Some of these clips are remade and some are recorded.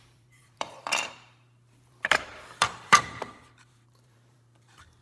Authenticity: remade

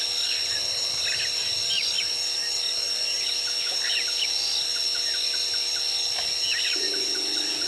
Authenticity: remade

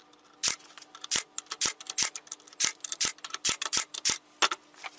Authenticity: recorded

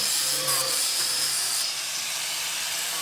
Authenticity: remade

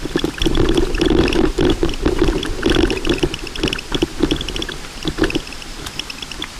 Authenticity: recorded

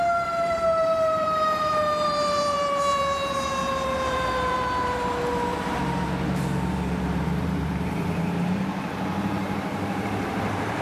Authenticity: remade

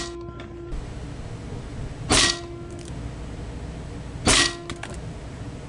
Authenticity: recorded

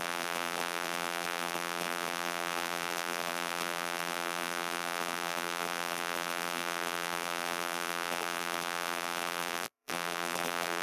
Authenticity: remade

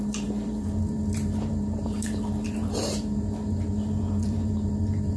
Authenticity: remade